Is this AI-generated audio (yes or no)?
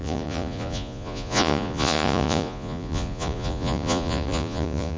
yes